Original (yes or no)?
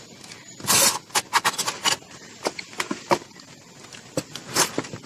yes